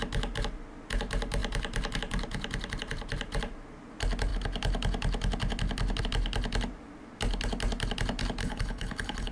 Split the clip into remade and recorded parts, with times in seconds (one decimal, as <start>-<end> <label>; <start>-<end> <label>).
0.0-8.4 recorded; 8.4-9.3 remade